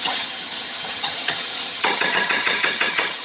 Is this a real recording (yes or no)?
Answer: no